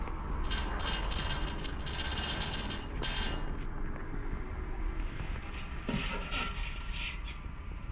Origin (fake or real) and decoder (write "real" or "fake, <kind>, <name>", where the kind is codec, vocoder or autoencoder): real